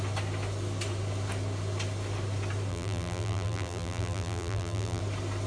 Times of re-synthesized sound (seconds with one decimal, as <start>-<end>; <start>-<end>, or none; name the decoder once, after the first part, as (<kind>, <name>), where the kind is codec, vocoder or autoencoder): 2.7-5.0 (vocoder, BigVGAN v2)